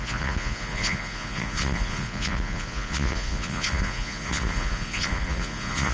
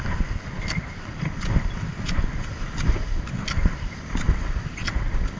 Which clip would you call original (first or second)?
second